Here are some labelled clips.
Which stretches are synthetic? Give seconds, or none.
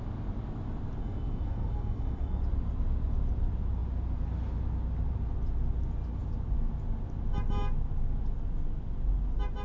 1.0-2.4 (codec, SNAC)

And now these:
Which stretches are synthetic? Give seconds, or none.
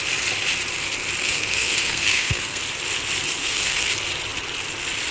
1.2-2.6 (codec, SNAC); 3.4-3.9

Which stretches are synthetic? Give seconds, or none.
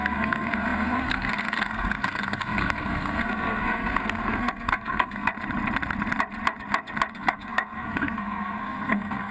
0.0-5.3 (codec, SNAC); 7.1-9.3